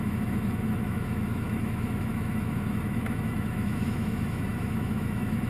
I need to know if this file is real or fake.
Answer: fake